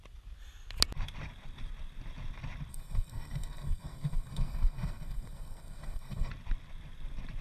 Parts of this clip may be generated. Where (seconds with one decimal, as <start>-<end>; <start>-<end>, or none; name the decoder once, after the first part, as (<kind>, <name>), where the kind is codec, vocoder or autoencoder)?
2.7-6.3 (codec, SNAC)